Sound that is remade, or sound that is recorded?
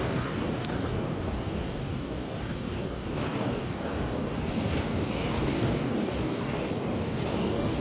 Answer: remade